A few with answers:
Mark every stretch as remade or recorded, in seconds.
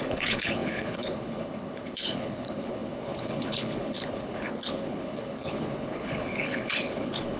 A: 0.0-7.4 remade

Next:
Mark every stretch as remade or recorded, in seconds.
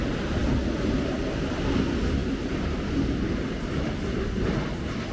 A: 0.0-0.4 recorded; 0.4-1.2 remade; 1.2-2.2 recorded; 2.2-3.7 remade; 3.7-5.1 recorded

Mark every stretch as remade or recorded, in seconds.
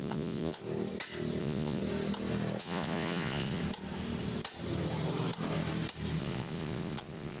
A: 0.0-0.6 remade; 0.6-1.4 recorded; 1.4-1.8 remade; 1.8-2.6 recorded; 2.6-3.6 remade; 3.6-6.2 recorded; 6.2-7.4 remade